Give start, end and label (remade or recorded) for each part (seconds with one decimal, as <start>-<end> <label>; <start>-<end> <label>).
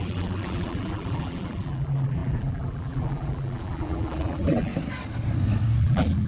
0.0-4.7 remade; 4.7-5.8 recorded; 5.8-6.3 remade